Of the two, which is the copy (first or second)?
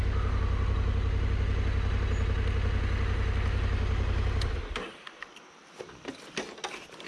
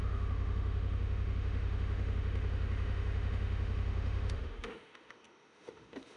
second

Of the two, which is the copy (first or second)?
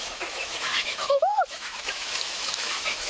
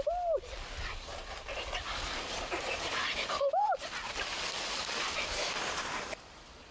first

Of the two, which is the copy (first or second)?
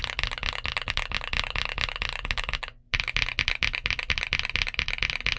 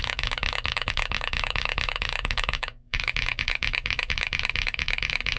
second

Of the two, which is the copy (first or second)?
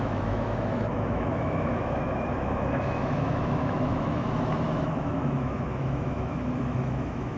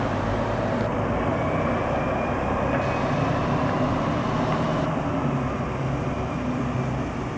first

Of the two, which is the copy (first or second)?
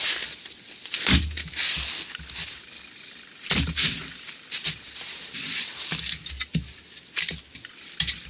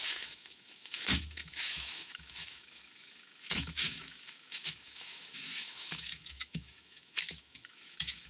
second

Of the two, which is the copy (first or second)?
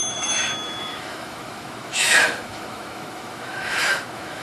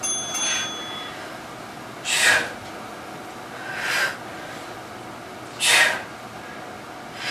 first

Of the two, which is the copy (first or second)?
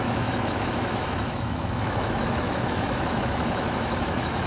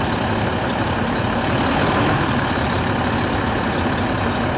first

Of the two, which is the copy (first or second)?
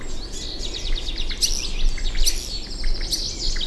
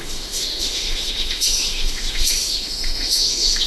second